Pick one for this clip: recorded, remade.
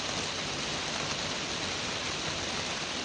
recorded